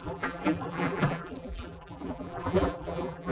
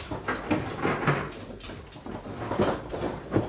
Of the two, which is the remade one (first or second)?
first